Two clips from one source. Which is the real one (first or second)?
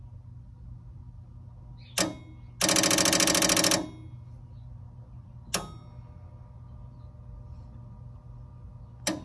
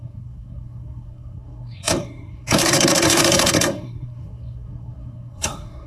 first